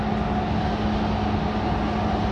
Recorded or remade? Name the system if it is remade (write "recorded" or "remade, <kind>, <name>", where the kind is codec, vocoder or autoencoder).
recorded